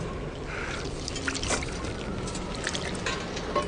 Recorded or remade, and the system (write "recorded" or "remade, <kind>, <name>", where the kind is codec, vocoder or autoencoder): recorded